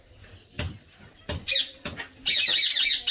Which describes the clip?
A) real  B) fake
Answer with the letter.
A